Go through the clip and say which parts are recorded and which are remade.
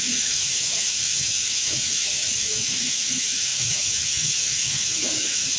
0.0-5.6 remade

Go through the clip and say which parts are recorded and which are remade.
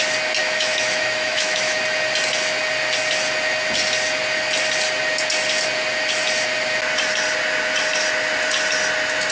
0.0-0.4 recorded; 0.4-1.8 remade; 1.8-9.3 recorded